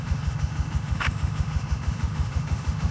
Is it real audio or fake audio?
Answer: fake